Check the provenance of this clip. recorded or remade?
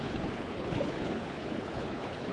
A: remade